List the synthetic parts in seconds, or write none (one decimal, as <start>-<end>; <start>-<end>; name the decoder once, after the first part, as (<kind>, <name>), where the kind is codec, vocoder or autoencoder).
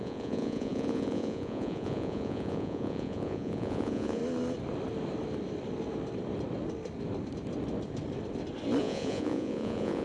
0.0-4.2 (vocoder, Vocos); 8.8-10.0